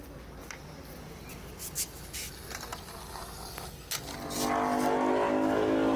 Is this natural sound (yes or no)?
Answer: yes